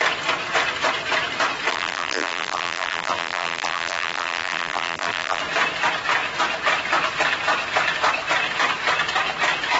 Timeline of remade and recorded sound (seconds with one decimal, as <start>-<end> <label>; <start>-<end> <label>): 0.0-1.7 recorded; 1.7-5.4 remade; 5.4-9.8 recorded